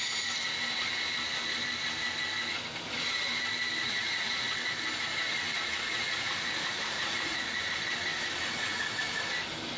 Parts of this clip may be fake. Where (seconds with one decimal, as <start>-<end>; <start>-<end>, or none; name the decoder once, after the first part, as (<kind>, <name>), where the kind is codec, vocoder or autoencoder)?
3.8-4.5 (vocoder, Vocos); 5.5-7.7; 8.6-9.2